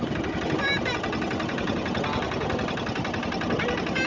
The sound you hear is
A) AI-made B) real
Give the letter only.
B